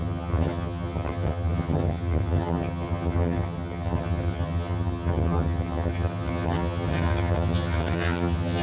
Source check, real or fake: fake